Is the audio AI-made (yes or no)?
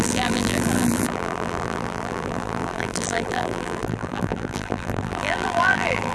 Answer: yes